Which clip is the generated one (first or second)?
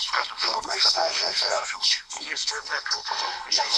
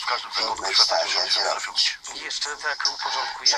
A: first